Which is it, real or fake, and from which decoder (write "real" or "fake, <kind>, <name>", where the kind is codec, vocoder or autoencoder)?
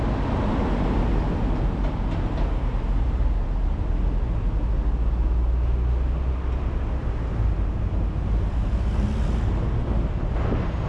real